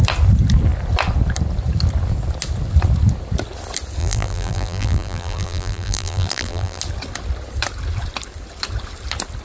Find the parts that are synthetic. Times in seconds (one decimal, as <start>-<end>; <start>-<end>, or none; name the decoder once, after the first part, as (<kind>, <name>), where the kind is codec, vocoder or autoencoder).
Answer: 4.0-6.8 (vocoder, BigVGAN v2)